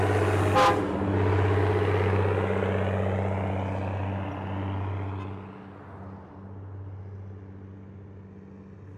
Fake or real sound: real